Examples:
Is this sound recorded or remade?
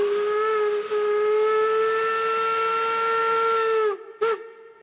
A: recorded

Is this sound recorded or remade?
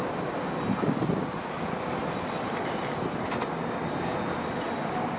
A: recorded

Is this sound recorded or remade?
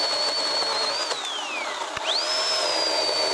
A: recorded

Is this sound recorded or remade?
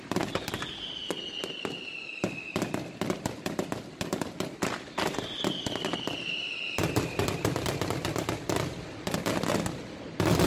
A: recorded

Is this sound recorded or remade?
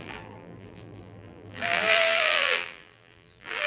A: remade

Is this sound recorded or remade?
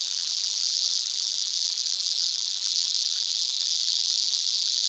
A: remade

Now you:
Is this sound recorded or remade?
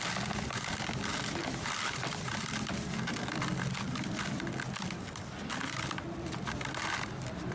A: remade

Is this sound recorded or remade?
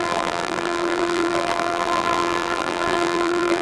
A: remade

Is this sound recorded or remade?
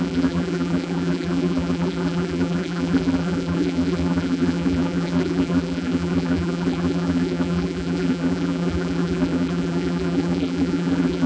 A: remade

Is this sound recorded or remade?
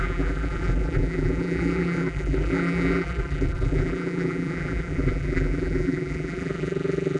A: remade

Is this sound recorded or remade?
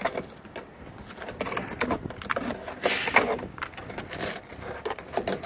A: remade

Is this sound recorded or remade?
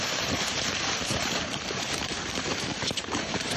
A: remade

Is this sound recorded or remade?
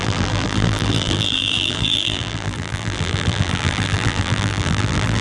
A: remade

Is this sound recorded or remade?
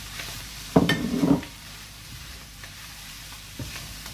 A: remade